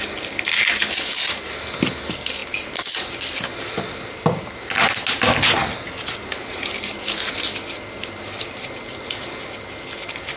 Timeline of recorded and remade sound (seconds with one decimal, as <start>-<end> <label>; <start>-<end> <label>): 0.0-10.4 recorded

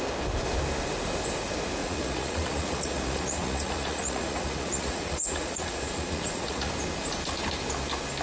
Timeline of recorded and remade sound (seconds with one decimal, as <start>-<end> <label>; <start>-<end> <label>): 0.0-1.8 recorded; 1.8-6.7 remade; 6.7-8.2 recorded

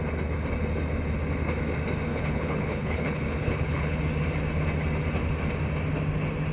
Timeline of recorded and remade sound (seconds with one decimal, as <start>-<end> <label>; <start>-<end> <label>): 0.0-2.1 recorded; 2.1-4.0 remade; 4.0-6.5 recorded

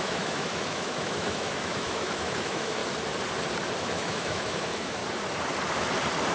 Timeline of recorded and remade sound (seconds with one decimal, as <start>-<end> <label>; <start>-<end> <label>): 0.0-2.8 remade; 2.8-3.8 recorded; 3.8-5.0 remade; 5.0-6.3 recorded

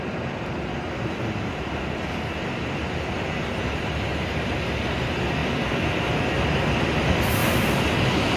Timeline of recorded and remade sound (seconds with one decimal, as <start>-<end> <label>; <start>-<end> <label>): 0.0-8.4 recorded